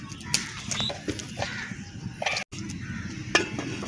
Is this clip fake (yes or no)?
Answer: no